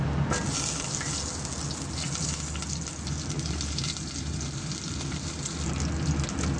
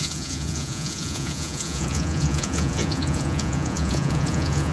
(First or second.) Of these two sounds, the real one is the first